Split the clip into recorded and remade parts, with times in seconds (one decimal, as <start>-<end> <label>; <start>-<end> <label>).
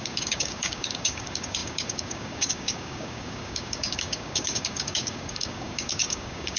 0.0-6.6 remade